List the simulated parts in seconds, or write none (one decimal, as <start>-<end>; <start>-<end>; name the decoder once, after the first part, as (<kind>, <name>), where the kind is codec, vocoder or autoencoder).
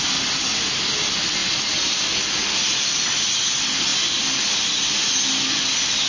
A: none